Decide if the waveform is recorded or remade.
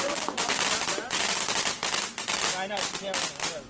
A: recorded